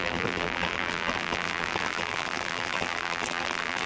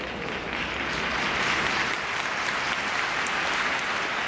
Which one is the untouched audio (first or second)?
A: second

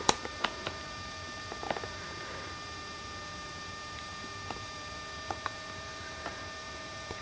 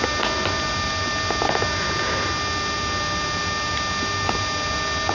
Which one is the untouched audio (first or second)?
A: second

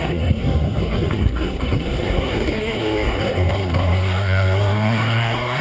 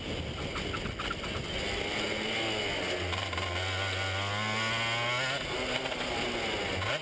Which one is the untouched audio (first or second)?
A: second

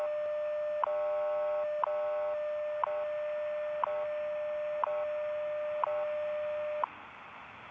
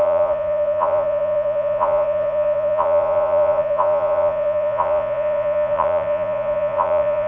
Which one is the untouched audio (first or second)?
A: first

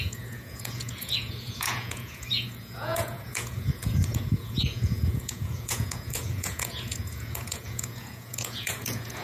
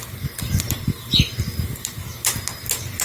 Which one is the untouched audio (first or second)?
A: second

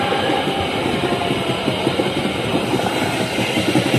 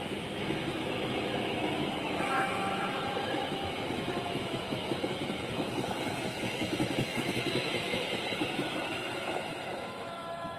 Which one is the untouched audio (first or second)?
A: first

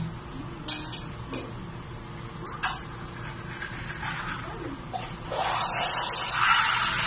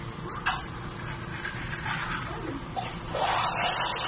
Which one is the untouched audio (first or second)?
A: first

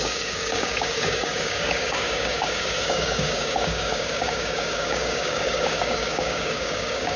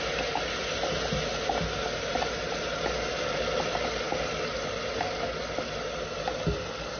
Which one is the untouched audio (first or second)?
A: second